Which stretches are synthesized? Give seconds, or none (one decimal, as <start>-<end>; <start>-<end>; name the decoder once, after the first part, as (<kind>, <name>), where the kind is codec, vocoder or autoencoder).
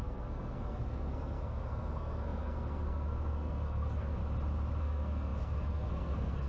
0.0-4.2 (codec, SNAC); 4.8-6.5